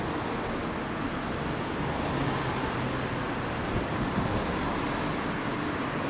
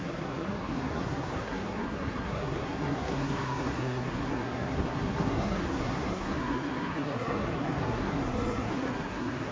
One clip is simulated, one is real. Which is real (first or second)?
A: first